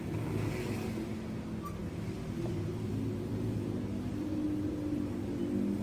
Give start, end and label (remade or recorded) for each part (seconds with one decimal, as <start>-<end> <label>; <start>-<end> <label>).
0.0-5.8 recorded